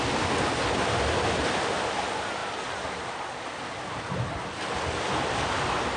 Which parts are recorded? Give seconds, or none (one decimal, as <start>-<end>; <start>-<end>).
0.0-6.0